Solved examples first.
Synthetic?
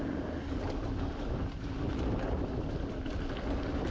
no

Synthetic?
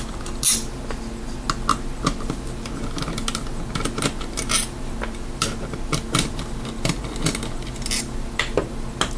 no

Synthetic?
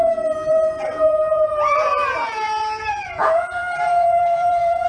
yes